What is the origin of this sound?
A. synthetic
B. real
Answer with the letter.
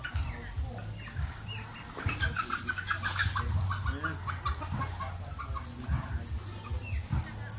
B